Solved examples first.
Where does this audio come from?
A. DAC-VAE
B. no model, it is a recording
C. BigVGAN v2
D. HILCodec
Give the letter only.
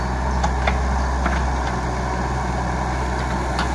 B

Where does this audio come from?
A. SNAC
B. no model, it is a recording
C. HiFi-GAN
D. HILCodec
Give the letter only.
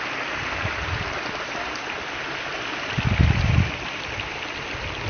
B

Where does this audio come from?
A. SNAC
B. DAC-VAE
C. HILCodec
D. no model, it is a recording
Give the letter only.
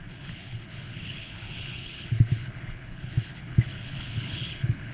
C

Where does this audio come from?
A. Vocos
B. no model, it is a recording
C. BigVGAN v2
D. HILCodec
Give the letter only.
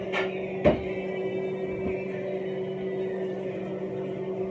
B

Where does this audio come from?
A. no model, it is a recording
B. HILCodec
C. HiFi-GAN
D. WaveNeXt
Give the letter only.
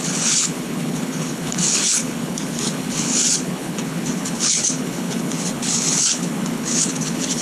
B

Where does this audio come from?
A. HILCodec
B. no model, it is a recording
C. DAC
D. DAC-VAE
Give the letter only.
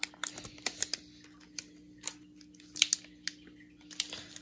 B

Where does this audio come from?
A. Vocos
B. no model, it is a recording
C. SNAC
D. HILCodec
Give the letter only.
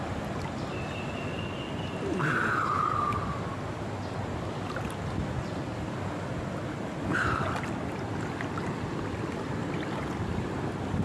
B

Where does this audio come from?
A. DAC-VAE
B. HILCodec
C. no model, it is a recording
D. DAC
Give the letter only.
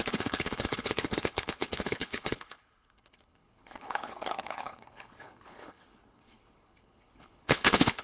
B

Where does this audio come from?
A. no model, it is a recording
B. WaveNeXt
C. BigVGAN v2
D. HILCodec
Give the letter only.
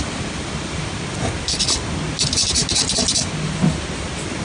A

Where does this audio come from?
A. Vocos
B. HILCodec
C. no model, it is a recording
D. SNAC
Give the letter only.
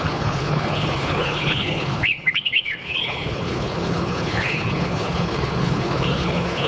B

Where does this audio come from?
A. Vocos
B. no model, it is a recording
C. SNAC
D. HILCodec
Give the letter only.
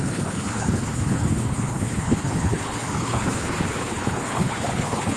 D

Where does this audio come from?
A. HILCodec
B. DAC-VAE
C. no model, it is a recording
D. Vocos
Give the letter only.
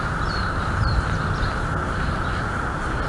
C